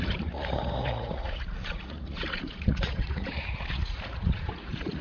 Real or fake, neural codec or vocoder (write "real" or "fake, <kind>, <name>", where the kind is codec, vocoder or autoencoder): fake, vocoder, Vocos